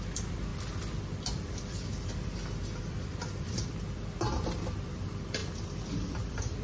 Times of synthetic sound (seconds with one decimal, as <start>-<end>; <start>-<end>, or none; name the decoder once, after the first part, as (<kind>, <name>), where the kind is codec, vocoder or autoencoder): 0.0-0.5 (vocoder, BigVGAN v2); 1.0-1.9; 2.8-6.6

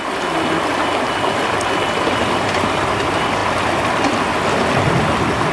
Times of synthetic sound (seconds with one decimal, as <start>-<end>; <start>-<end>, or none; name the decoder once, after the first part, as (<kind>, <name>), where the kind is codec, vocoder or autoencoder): 0.0-1.4 (vocoder, BigVGAN v2); 2.6-3.4

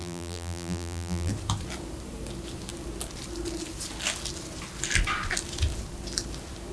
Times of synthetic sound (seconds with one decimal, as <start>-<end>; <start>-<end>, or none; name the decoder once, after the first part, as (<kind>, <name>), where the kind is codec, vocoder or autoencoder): 0.0-1.3 (vocoder, BigVGAN v2)